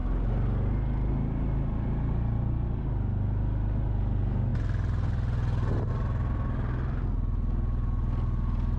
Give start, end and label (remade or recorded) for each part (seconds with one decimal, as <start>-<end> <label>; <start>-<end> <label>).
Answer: 0.0-8.8 recorded